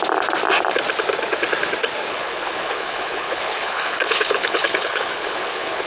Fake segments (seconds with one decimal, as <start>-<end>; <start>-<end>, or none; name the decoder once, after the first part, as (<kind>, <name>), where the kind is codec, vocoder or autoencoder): 2.1-5.9 (codec, HILCodec)